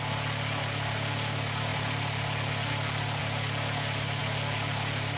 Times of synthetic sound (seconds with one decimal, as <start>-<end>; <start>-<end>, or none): none